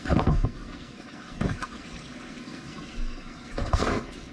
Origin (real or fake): fake